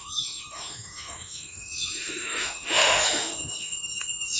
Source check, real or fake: fake